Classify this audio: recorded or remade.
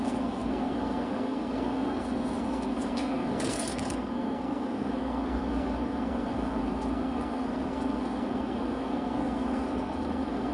remade